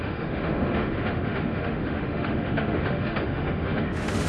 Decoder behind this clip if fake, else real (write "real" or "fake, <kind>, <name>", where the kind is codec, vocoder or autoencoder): fake, autoencoder, DAC-VAE